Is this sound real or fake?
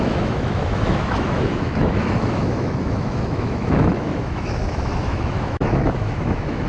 fake